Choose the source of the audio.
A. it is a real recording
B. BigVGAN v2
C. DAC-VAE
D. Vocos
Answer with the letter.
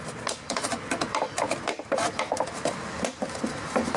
A